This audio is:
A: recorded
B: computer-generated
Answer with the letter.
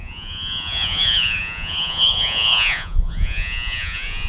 B